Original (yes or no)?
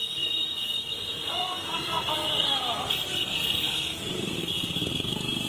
no